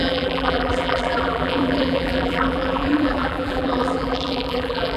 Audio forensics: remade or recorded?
remade